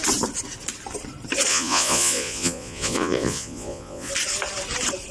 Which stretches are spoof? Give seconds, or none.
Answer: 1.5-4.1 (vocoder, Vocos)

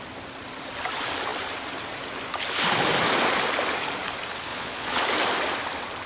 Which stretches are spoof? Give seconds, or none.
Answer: 4.5-5.0 (vocoder, Vocos)

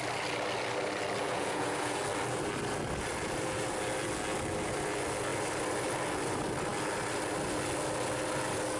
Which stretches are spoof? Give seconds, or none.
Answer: 1.2-2.0 (vocoder, Vocos)

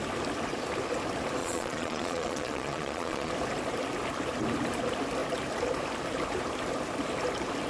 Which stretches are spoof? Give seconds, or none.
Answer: 1.4-3.3 (vocoder, Vocos)

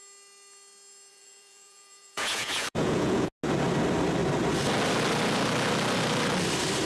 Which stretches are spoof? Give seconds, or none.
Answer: 1.1-3.3 (vocoder, Vocos)